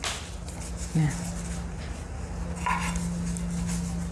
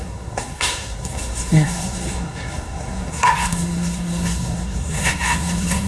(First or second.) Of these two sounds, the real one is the first